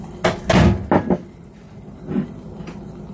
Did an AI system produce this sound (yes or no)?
no